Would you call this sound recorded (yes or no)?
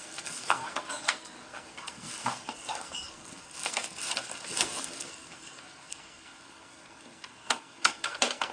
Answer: no